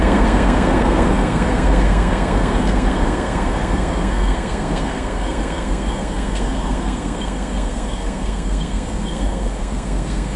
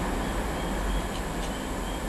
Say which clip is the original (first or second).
second